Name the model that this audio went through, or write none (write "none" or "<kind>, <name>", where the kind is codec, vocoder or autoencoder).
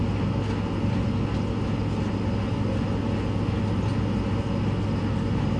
none